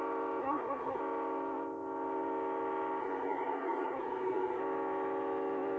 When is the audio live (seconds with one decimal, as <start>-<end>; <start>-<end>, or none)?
0.0-0.4; 1.0-3.0; 4.6-5.8